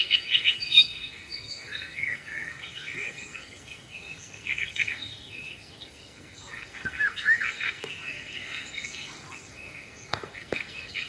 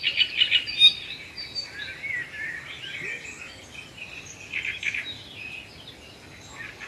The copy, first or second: first